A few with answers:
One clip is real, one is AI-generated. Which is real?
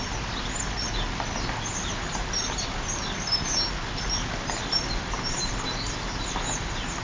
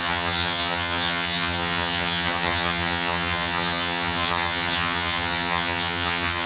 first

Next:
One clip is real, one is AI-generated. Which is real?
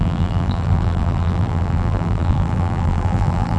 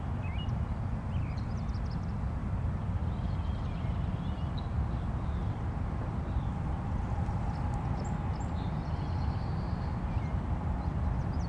second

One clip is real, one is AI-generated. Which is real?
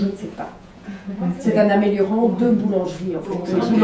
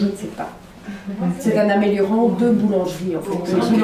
second